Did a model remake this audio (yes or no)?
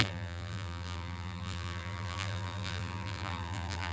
yes